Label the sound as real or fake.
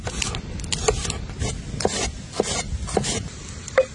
real